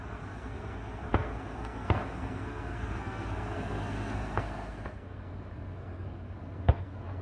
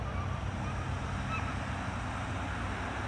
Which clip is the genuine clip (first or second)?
second